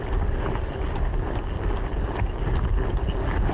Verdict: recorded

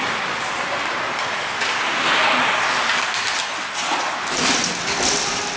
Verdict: recorded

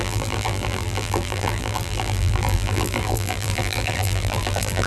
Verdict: remade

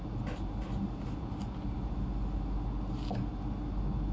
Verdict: recorded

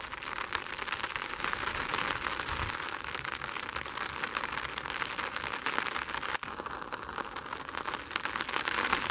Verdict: recorded